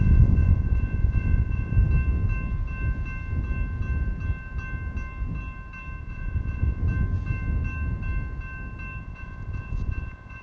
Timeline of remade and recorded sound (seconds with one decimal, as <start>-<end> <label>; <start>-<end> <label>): 0.0-1.8 remade; 1.8-6.0 recorded; 6.0-6.8 remade; 6.8-9.0 recorded; 9.0-10.4 remade

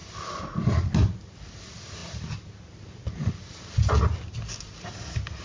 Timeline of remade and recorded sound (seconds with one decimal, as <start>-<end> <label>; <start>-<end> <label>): 0.0-5.4 recorded

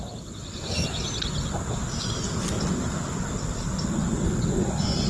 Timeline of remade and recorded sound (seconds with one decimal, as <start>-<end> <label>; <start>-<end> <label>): 0.0-5.1 recorded

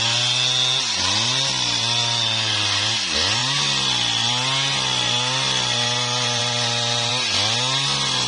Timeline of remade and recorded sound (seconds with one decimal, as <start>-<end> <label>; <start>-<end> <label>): 0.0-8.3 recorded